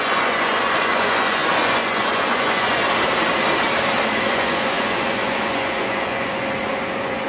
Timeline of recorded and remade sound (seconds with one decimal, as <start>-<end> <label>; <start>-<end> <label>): 0.0-2.8 remade; 2.8-4.3 recorded; 4.3-7.3 remade